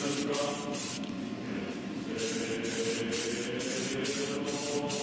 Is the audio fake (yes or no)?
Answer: no